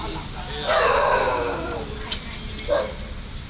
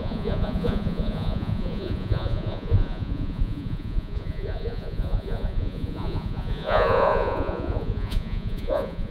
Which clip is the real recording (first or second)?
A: first